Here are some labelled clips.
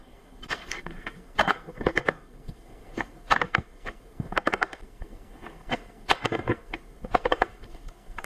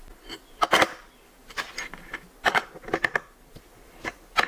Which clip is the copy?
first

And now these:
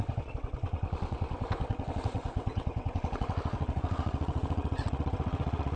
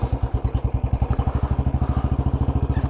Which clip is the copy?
first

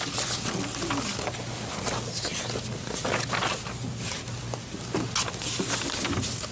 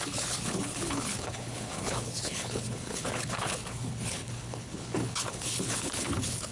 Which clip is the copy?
second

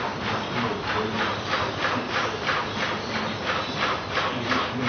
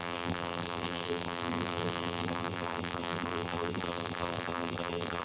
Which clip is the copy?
second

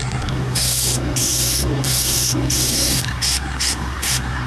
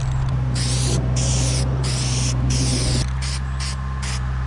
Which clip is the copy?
first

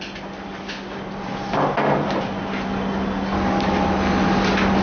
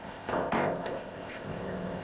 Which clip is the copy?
second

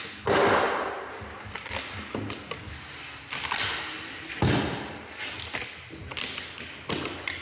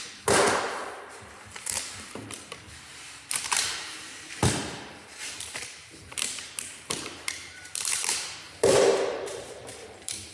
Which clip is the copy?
second